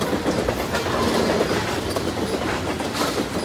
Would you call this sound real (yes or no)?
yes